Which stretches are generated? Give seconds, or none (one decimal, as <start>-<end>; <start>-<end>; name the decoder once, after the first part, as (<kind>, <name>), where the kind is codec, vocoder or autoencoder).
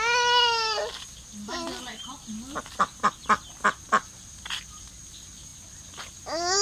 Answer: none